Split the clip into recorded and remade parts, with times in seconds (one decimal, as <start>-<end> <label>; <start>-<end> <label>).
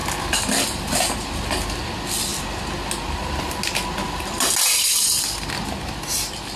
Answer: 0.0-6.6 recorded